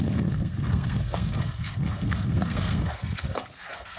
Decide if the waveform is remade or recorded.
remade